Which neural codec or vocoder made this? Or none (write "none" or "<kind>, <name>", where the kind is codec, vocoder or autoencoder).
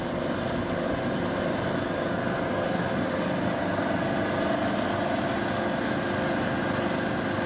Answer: none